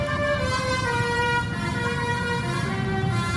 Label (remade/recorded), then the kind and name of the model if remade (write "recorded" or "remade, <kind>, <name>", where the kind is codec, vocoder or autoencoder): remade, vocoder, BigVGAN v2